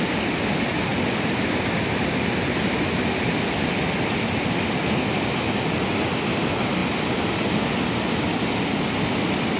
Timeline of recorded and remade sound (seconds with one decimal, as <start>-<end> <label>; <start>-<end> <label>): 0.0-9.6 recorded